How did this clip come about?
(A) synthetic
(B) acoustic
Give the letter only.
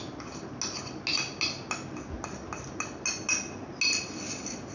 B